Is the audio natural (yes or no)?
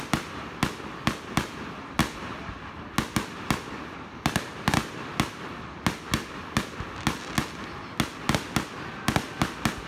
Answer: yes